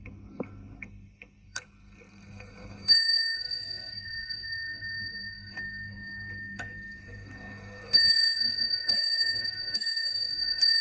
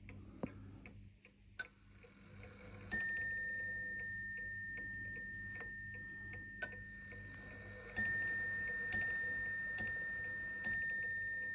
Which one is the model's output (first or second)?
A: first